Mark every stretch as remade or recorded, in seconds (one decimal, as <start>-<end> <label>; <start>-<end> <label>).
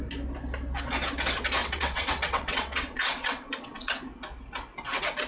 0.0-1.6 recorded; 1.6-4.0 remade; 4.0-5.3 recorded